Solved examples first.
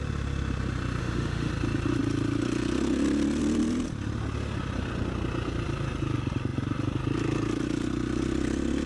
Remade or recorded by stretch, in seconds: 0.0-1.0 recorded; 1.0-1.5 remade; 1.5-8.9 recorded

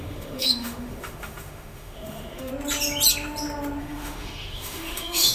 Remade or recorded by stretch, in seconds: 0.0-2.5 remade; 2.5-3.8 recorded; 3.8-5.3 remade

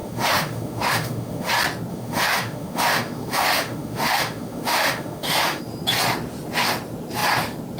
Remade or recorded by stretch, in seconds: 0.0-1.5 remade; 1.5-1.9 recorded; 1.9-5.6 remade; 5.6-7.8 recorded

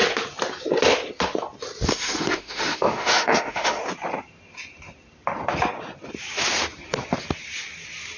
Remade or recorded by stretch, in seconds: 0.0-1.9 recorded; 1.9-3.8 remade; 3.8-8.2 recorded

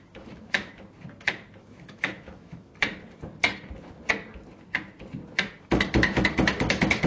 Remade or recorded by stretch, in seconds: 0.0-0.7 remade; 0.7-1.6 recorded; 1.6-2.7 remade; 2.7-5.6 recorded; 5.6-7.1 remade

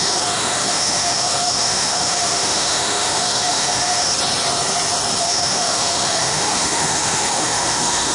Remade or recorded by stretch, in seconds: 0.0-4.1 remade; 4.1-5.2 recorded; 5.2-8.1 remade

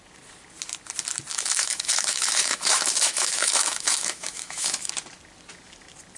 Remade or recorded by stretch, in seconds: 0.0-1.3 recorded; 1.3-4.9 remade; 4.9-6.2 recorded